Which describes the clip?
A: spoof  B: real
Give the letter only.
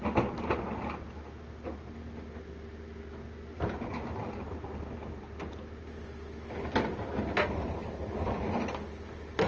B